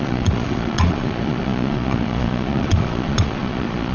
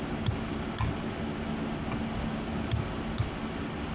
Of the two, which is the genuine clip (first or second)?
second